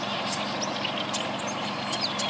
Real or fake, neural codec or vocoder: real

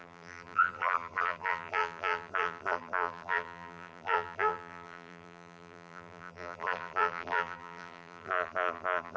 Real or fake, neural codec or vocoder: fake, vocoder, BigVGAN v2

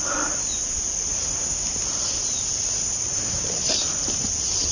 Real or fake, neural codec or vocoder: real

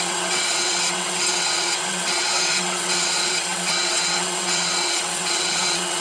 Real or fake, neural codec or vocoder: fake, vocoder, WaveNeXt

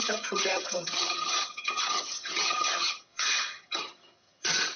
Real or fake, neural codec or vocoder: fake, vocoder, HiFi-GAN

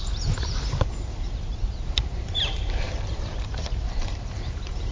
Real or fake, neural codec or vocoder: fake, vocoder, BigVGAN v2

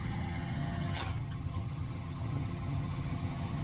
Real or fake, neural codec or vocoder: fake, vocoder, HiFi-GAN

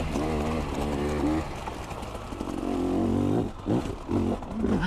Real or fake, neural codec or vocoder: real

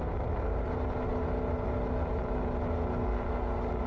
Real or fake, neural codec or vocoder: real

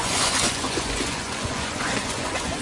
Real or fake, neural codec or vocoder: fake, vocoder, Vocos